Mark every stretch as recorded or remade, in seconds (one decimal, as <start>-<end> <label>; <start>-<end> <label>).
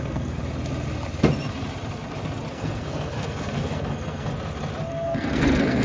0.0-0.4 remade; 0.4-2.5 recorded; 2.5-4.3 remade; 4.3-4.9 recorded; 4.9-5.8 remade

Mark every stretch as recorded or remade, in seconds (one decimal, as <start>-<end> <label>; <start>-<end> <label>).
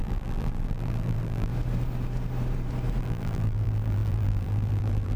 0.0-1.5 remade; 1.5-3.0 recorded; 3.0-5.2 remade